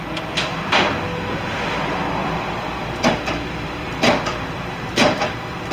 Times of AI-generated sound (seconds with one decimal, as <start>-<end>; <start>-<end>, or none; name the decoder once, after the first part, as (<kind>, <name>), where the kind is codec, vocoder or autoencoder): 2.2-5.7 (vocoder, BigVGAN v2)